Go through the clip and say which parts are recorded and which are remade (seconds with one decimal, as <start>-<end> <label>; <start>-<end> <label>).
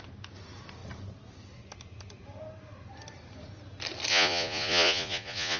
0.0-4.1 recorded; 4.1-5.6 remade